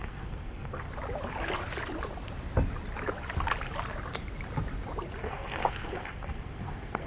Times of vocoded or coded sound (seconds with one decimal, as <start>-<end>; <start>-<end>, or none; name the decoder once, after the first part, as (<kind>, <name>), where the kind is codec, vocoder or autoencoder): 0.0-0.9 (codec, SNAC); 5.2-7.1